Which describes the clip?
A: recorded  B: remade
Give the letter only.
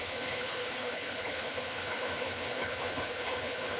B